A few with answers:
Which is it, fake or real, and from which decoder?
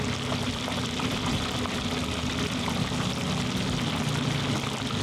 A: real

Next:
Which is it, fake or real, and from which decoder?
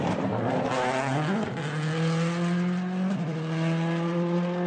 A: real